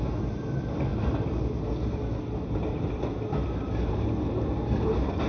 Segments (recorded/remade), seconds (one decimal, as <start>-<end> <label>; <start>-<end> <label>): 0.0-5.3 recorded